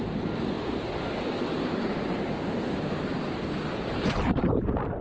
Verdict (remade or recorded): remade